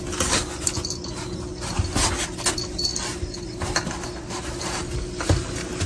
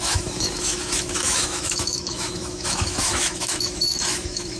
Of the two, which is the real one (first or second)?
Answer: first